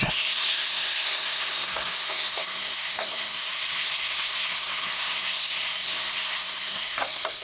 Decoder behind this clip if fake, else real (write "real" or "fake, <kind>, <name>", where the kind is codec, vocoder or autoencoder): fake, codec, SNAC